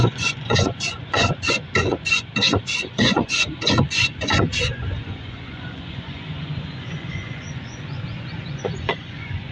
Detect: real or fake fake